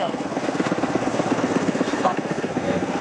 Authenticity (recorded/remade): remade